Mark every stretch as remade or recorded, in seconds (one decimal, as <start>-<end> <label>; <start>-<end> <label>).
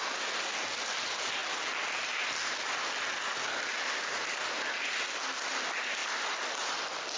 0.0-7.2 recorded